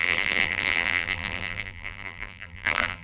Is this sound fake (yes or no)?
yes